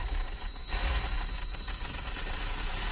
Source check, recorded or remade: remade